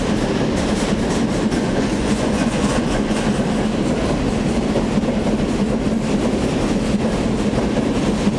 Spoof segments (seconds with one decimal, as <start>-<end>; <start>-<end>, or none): 1.6-3.2